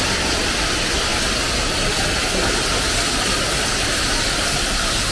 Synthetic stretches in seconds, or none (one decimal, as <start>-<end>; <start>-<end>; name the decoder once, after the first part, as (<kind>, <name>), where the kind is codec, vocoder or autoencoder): none